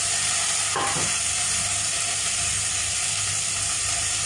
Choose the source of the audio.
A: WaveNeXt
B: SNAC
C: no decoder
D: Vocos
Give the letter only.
C